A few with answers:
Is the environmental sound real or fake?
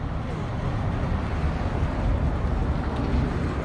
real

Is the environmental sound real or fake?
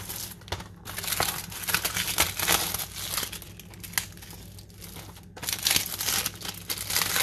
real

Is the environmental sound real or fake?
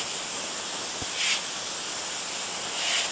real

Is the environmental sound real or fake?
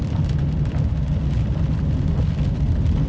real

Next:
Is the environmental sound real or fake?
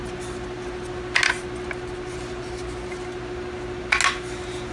real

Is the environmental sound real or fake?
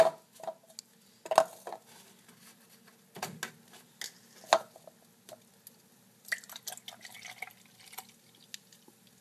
real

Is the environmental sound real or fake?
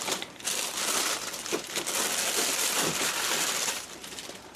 fake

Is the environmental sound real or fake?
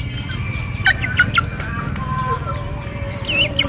real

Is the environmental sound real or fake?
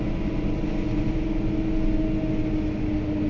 real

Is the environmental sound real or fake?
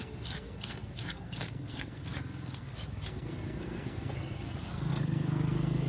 fake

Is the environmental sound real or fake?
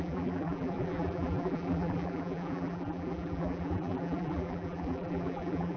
fake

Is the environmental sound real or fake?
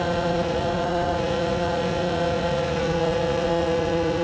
fake